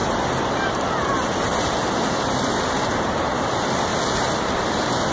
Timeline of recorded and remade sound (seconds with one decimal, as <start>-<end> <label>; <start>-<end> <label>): 0.0-3.1 remade; 3.1-5.1 recorded